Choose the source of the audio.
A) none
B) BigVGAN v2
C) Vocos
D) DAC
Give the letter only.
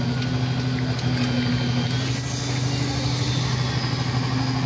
A